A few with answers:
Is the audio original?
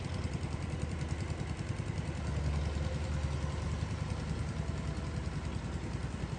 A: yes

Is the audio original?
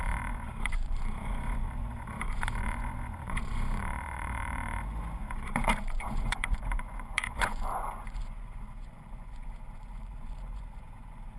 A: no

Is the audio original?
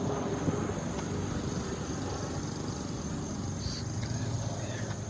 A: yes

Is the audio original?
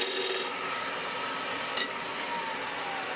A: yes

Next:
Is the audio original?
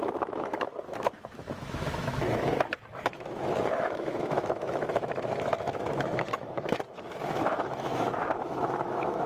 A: no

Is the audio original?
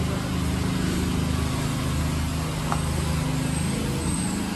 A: yes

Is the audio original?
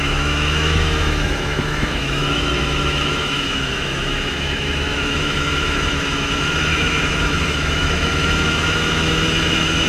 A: no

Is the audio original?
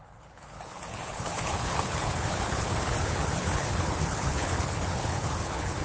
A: no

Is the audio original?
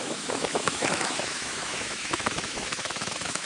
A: no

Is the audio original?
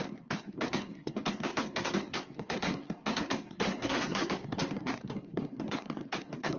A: no